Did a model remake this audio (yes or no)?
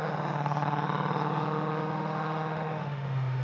yes